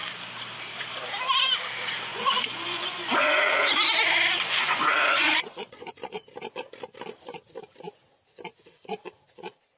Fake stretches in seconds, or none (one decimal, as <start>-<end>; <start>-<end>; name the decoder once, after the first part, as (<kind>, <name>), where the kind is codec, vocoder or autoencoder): 2.1-5.9 (vocoder, Vocos)